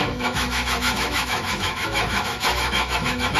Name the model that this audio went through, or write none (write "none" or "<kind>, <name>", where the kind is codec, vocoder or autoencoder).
autoencoder, DAC-VAE